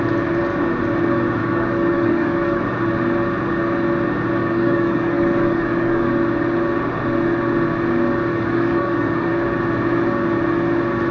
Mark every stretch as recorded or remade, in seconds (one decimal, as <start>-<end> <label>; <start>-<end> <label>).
0.0-1.4 recorded; 1.4-2.6 remade; 2.6-4.4 recorded; 4.4-6.1 remade; 6.1-8.3 recorded; 8.3-9.3 remade; 9.3-11.1 recorded